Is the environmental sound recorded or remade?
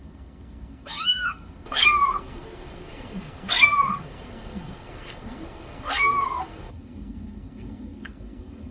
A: remade